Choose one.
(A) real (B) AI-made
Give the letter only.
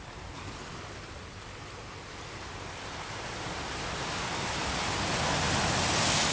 A